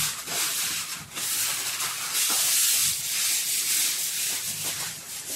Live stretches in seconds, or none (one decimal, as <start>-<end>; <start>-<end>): 0.9-2.3; 2.8-4.7